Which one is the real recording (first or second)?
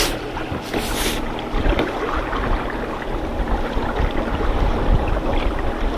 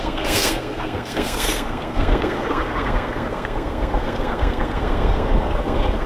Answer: first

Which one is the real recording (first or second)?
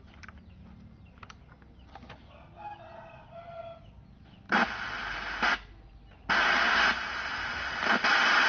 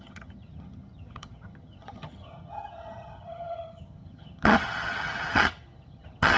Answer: first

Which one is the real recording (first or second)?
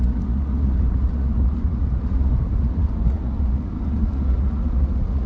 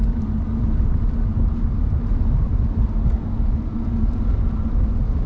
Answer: second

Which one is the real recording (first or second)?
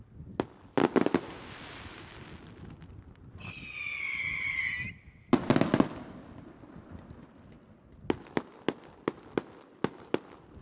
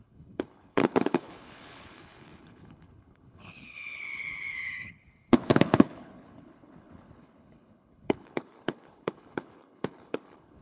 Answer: first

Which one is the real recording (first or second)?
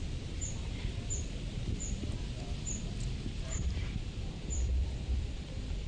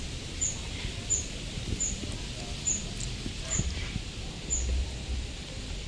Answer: second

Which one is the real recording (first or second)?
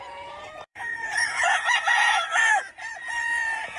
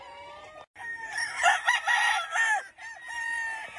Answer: second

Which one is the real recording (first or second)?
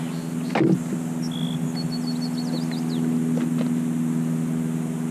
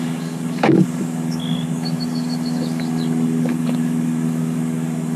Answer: first